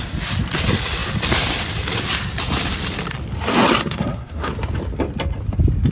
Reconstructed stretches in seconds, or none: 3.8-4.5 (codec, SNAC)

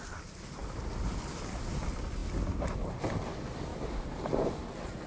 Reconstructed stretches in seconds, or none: 3.7-5.1 (vocoder, BigVGAN v2)

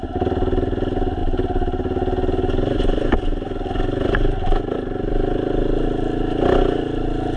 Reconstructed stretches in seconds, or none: none

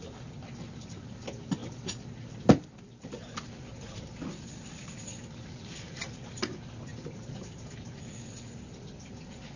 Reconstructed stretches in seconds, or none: none

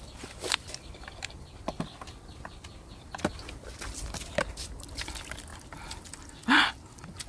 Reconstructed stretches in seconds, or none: none

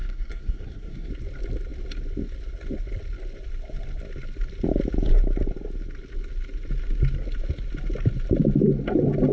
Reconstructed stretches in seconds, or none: 0.0-1.1 (codec, SNAC)